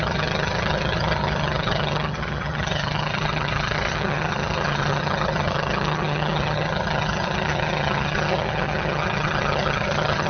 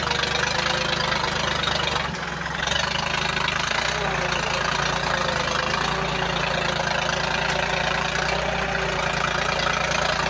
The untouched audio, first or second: second